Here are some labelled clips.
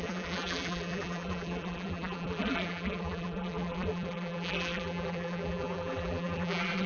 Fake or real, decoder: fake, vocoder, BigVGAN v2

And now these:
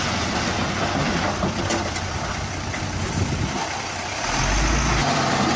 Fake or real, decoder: fake, vocoder, BigVGAN v2